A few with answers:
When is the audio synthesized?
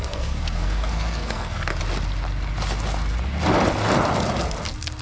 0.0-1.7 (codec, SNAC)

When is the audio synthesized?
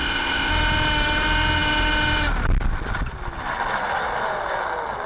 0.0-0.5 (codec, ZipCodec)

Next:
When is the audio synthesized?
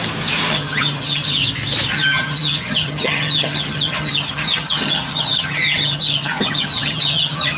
0.5-1.4 (vocoder, HiFi-GAN); 1.9-7.6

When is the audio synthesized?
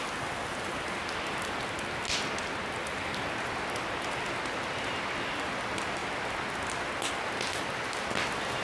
2.8-3.3 (vocoder, BigVGAN v2)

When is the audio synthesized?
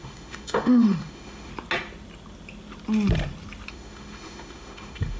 0.0-1.5 (autoencoder, DAC-VAE); 3.7-5.2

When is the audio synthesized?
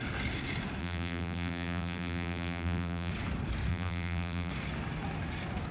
0.8-3.1 (vocoder, BigVGAN v2); 3.7-4.5